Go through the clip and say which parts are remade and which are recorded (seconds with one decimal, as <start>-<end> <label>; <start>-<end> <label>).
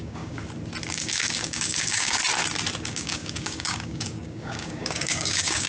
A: 0.0-0.4 remade; 0.4-0.9 recorded; 0.9-2.2 remade; 2.2-2.8 recorded; 2.8-5.7 remade